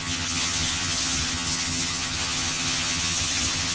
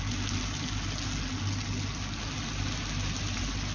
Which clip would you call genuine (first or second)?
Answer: second